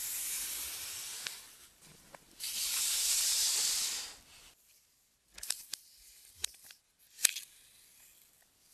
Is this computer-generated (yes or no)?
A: no